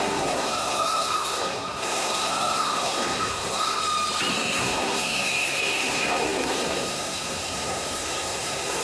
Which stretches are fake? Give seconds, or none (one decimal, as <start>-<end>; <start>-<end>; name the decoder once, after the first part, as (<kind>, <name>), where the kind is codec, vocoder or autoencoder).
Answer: 0.0-3.8 (codec, SNAC); 4.3-8.8